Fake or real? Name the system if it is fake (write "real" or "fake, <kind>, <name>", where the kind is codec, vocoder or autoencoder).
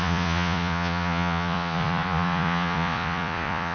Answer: fake, vocoder, Vocos